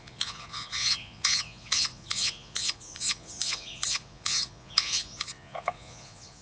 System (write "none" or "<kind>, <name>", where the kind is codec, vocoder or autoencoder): vocoder, Vocos